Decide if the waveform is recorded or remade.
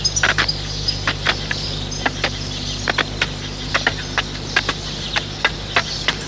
recorded